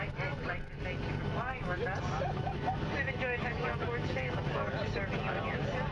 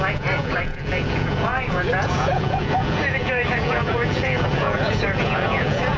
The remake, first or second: second